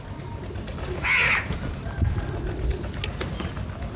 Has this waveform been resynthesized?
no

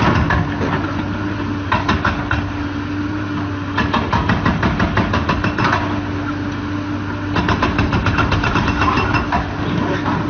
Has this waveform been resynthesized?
no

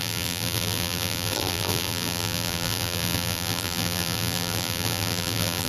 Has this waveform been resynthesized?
yes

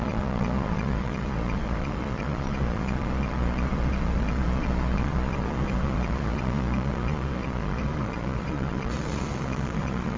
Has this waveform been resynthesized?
yes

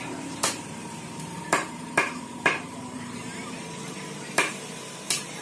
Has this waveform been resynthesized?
yes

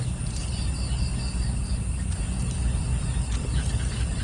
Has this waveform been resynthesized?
no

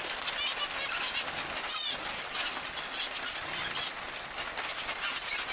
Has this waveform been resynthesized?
no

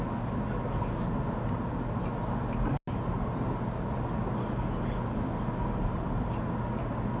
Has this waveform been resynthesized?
no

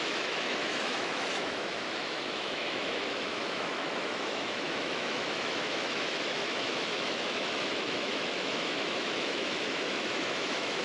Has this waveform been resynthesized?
yes